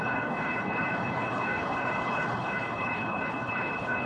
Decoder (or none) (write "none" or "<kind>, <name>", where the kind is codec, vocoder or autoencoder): codec, HILCodec